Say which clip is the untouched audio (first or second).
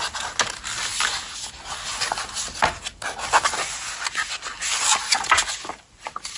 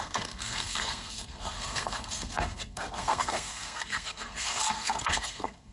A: first